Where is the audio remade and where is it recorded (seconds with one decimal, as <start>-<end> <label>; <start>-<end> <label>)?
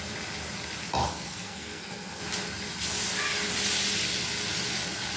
0.0-1.0 recorded; 1.0-2.2 remade; 2.2-5.2 recorded